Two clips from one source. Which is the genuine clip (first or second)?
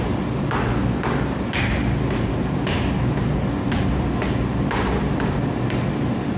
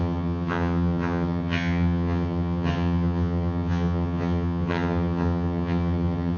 first